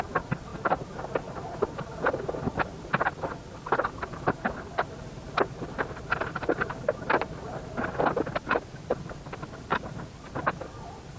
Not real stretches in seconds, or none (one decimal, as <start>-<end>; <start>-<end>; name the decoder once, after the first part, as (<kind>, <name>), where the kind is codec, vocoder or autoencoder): none